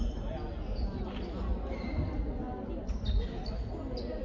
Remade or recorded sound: recorded